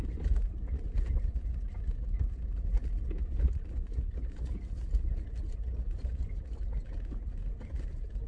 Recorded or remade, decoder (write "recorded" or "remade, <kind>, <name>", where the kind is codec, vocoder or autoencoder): recorded